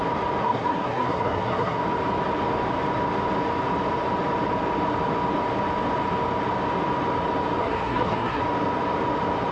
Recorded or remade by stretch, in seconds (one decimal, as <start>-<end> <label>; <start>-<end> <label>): 0.0-0.4 recorded; 0.4-1.8 remade; 1.8-7.6 recorded; 7.6-8.4 remade; 8.4-9.5 recorded